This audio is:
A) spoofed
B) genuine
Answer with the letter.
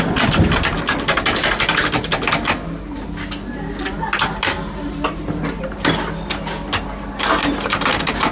B